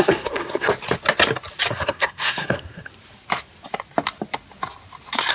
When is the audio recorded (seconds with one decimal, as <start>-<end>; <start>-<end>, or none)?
0.7-1.7; 2.9-5.3